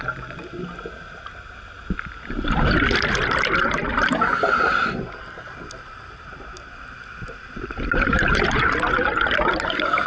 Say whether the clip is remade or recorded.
remade